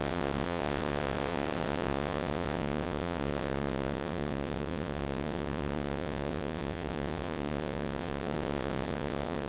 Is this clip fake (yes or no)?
yes